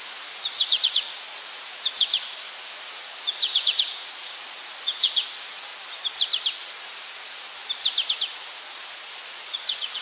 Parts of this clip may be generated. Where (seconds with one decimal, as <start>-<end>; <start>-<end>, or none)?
0.0-5.7; 6.6-7.6; 8.4-10.0